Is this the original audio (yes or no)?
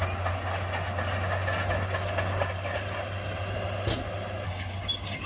yes